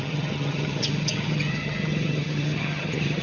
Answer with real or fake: fake